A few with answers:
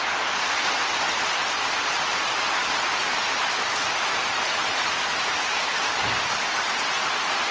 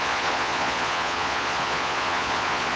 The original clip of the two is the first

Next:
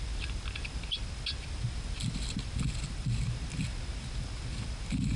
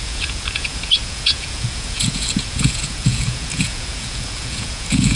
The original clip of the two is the first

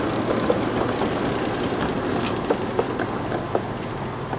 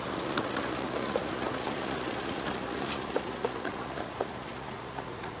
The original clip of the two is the first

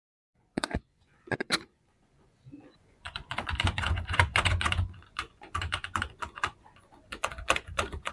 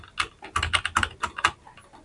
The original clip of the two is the second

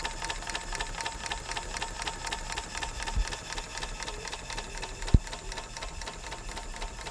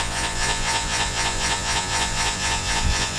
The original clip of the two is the first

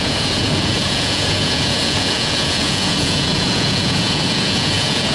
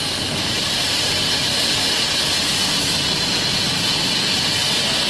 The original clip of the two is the second